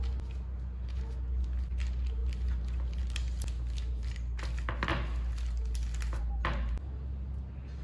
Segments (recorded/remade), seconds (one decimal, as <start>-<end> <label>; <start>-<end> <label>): 0.0-7.8 recorded